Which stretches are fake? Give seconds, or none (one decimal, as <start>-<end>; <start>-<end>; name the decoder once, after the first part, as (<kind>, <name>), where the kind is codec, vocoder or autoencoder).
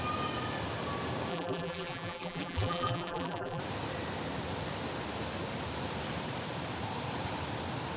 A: 1.3-3.6 (vocoder, BigVGAN v2)